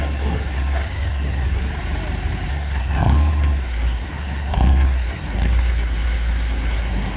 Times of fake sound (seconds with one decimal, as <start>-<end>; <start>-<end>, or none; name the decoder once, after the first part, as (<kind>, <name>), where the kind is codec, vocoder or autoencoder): 0.0-1.7 (codec, SNAC); 2.5-7.2